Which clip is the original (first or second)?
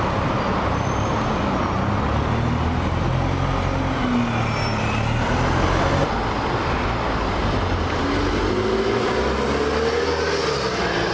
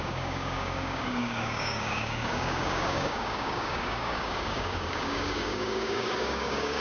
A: first